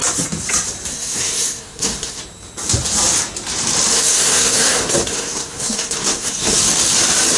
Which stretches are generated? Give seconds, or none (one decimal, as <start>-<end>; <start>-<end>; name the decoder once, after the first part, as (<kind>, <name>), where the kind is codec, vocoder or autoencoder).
0.9-2.2 (codec, SNAC); 3.9-6.6